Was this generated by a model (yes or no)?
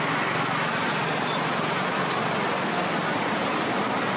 no